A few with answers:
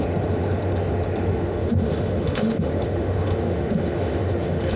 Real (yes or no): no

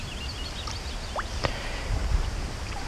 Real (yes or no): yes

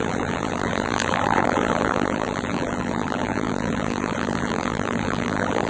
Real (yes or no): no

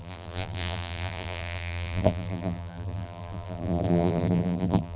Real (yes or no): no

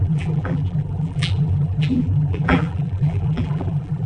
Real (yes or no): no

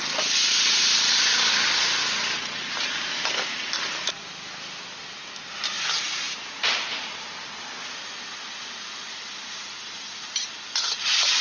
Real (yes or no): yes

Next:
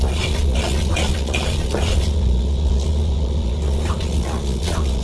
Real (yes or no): no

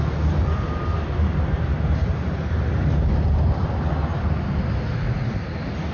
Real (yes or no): yes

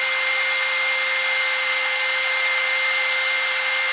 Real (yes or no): yes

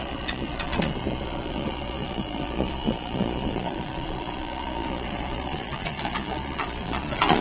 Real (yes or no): no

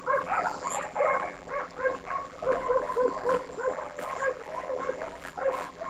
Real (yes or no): no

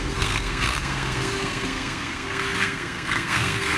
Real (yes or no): no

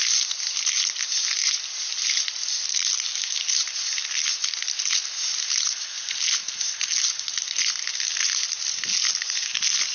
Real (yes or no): yes